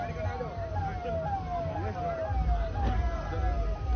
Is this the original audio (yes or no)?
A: yes